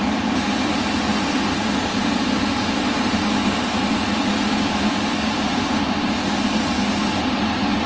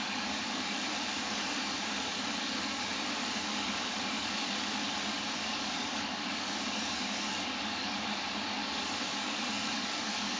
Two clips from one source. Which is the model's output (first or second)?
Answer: second